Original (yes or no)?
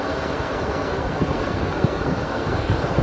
no